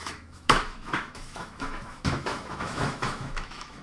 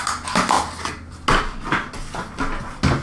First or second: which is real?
second